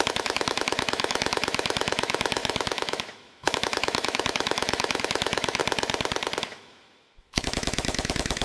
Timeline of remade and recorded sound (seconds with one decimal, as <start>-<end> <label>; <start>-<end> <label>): 0.0-5.6 remade; 5.6-6.4 recorded; 6.4-8.4 remade